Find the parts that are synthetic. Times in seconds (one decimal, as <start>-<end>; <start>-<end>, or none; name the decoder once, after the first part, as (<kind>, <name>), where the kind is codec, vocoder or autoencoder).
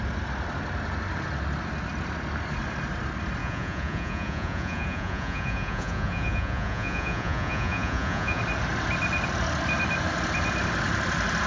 3.4-8.4 (vocoder, Vocos)